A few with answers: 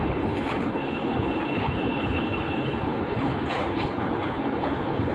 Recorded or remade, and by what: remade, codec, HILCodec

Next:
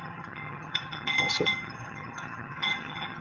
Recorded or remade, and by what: remade, vocoder, HiFi-GAN